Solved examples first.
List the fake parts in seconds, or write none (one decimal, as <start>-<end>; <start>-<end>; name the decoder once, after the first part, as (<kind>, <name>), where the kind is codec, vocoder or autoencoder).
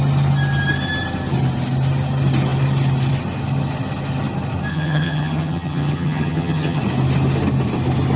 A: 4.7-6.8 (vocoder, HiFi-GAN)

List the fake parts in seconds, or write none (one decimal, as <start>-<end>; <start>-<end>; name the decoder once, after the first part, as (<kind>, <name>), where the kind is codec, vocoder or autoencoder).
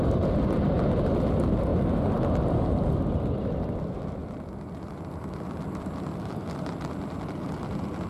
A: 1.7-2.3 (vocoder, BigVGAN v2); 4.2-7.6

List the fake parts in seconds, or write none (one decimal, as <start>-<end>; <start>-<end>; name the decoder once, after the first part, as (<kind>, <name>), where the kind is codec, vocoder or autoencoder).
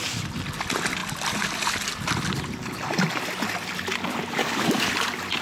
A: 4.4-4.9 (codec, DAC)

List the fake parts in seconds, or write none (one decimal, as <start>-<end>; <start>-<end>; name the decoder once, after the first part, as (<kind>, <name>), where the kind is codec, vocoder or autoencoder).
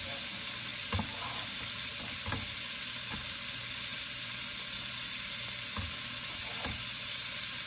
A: 3.9-5.2 (vocoder, BigVGAN v2)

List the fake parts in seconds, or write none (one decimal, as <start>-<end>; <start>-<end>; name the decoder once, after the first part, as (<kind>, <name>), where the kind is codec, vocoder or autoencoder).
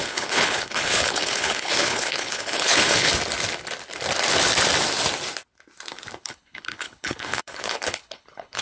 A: 0.0-3.1 (codec, HILCodec); 6.2-8.6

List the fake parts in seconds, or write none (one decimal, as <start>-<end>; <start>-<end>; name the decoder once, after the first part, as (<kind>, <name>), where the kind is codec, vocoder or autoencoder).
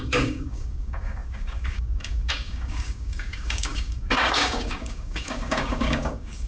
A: 0.0-6.5 (codec, DAC)